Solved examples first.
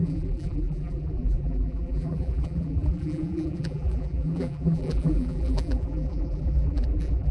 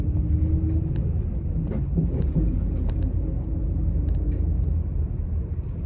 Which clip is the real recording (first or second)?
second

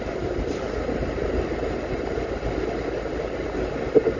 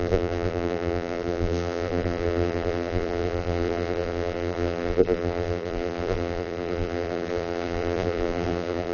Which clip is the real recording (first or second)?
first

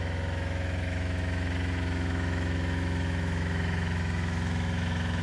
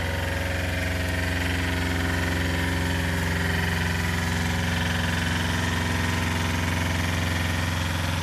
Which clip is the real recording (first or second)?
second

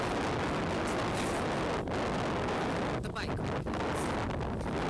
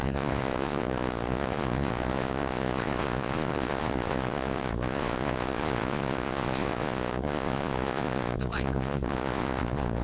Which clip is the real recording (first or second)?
first